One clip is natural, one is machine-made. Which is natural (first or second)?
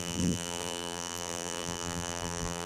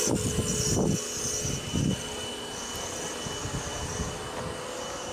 second